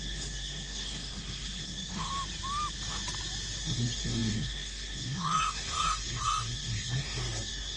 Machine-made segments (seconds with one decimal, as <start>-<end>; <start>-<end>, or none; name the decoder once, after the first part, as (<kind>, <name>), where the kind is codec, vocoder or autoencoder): 0.0-2.1 (codec, SNAC); 3.6-7.8